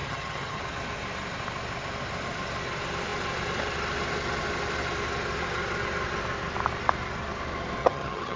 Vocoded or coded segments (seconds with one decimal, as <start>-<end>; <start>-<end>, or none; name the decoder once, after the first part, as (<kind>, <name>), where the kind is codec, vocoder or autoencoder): 0.0-0.6 (vocoder, HiFi-GAN); 7.8-8.4